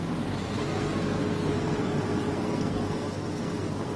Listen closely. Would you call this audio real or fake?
fake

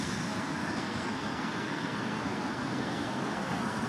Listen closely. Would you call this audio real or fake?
fake